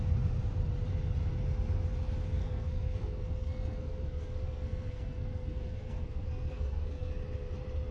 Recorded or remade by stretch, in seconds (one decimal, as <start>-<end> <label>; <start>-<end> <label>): 0.0-2.4 recorded; 2.4-7.1 remade; 7.1-7.9 recorded